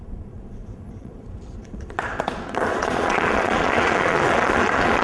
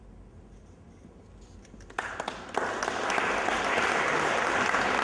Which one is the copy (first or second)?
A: first